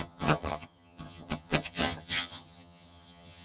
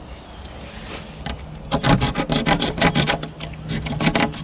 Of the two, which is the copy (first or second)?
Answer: first